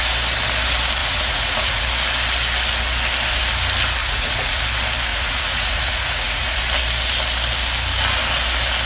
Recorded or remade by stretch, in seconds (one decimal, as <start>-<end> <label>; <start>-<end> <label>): 0.0-1.0 recorded; 1.0-1.8 remade; 1.8-4.0 recorded; 4.0-4.6 remade; 4.6-5.1 recorded; 5.1-6.6 remade; 6.6-8.9 recorded